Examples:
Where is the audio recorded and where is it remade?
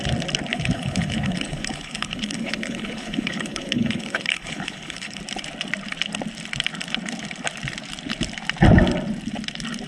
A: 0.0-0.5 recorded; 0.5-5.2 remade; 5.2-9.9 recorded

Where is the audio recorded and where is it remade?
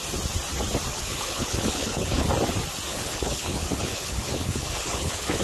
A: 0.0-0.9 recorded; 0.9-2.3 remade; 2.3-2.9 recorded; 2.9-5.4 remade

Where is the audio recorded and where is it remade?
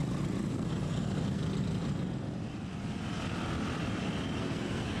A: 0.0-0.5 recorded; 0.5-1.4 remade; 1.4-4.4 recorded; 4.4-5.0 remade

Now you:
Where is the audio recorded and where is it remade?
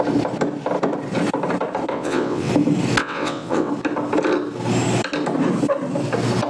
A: 0.0-1.9 recorded; 1.9-2.5 remade; 2.5-3.0 recorded; 3.0-3.7 remade; 3.7-6.5 recorded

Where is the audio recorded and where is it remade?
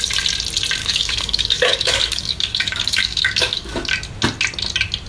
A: 0.0-0.8 recorded; 0.8-3.9 remade; 3.9-5.1 recorded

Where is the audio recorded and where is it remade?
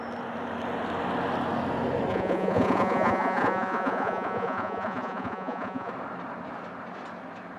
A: 0.0-2.1 recorded; 2.1-5.9 remade; 5.9-7.6 recorded